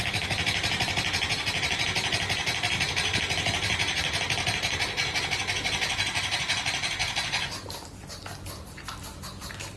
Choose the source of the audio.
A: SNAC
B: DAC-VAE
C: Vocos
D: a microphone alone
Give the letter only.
D